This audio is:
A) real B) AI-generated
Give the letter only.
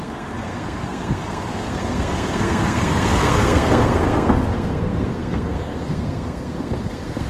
B